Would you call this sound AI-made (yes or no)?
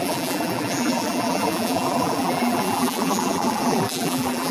yes